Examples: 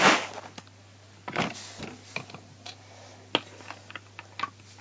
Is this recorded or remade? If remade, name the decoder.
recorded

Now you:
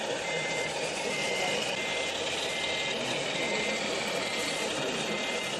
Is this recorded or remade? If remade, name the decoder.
recorded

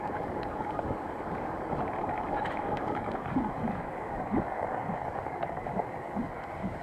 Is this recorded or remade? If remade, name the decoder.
remade, codec, DAC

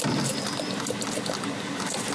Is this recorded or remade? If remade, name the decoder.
recorded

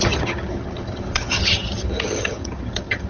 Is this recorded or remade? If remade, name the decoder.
remade, vocoder, HiFi-GAN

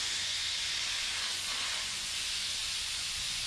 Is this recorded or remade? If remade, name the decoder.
remade, vocoder, Vocos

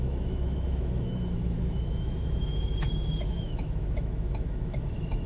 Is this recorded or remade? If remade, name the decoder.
remade, autoencoder, DAC-VAE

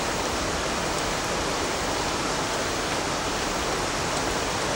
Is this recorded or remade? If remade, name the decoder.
recorded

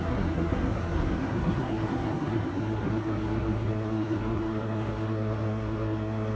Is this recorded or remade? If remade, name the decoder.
remade, codec, SNAC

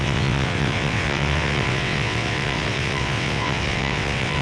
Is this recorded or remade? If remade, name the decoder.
remade, vocoder, WaveNeXt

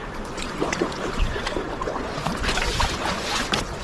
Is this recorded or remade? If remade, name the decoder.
remade, vocoder, Vocos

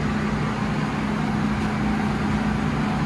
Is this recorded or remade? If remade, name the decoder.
recorded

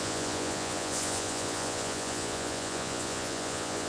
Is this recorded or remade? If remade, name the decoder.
remade, vocoder, Vocos